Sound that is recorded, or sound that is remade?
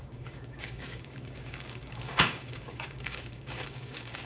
remade